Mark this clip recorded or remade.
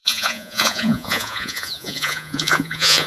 remade